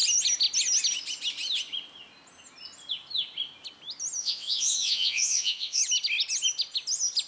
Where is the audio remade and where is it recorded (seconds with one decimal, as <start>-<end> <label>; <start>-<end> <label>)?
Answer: 0.0-4.2 recorded; 4.2-5.8 remade; 5.8-7.3 recorded